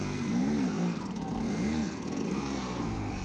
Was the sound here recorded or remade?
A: remade